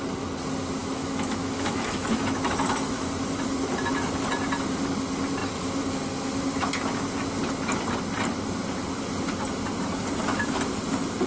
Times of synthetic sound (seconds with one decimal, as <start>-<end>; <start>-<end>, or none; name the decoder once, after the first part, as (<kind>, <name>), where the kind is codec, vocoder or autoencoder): 0.8-3.1 (autoencoder, DAC-VAE)